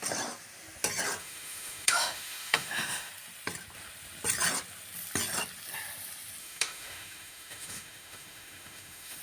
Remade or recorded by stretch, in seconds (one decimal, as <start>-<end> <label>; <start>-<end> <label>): 0.0-1.2 recorded; 1.2-3.1 remade; 3.1-6.4 recorded; 6.4-9.2 remade